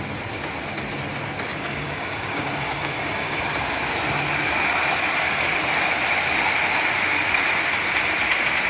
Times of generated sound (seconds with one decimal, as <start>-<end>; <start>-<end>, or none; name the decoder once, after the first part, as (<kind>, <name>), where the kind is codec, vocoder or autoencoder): 1.5-3.4 (codec, DAC)